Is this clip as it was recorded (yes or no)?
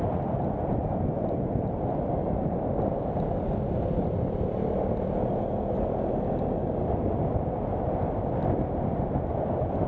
yes